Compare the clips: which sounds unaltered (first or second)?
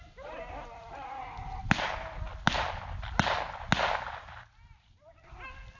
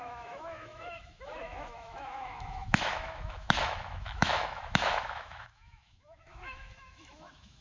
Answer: first